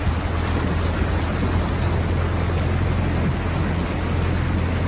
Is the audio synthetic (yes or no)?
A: no